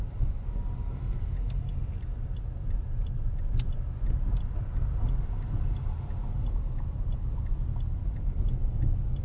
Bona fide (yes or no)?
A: yes